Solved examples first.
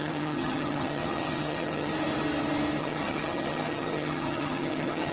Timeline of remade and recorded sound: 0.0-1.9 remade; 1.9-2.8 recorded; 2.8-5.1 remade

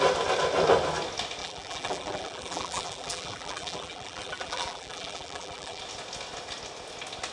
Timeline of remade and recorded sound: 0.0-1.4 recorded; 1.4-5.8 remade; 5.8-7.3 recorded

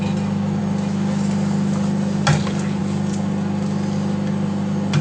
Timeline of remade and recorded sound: 0.0-5.0 recorded

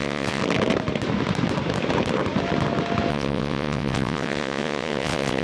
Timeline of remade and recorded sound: 0.0-0.4 remade; 0.4-3.1 recorded; 3.1-5.4 remade

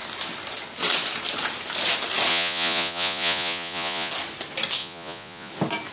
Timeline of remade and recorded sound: 0.0-2.3 recorded; 2.3-4.1 remade; 4.1-4.8 recorded; 4.8-5.5 remade; 5.5-5.9 recorded